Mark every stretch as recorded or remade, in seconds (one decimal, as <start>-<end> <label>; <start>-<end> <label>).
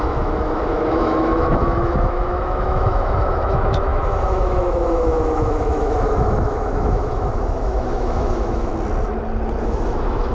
0.0-8.7 remade; 8.7-9.6 recorded; 9.6-10.3 remade